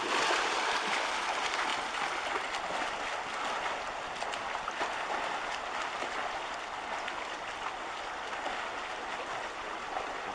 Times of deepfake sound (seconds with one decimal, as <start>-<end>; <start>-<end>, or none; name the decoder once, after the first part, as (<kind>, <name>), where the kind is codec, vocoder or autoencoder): none